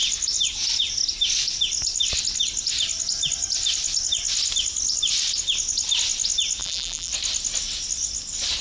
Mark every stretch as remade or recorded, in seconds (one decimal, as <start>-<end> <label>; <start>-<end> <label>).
0.0-6.6 recorded; 6.6-7.1 remade; 7.1-8.6 recorded